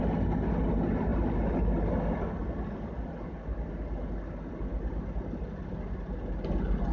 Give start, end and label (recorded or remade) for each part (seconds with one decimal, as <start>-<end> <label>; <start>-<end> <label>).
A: 0.0-6.9 recorded